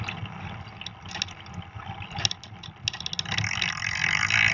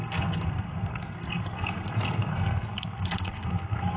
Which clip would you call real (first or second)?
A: first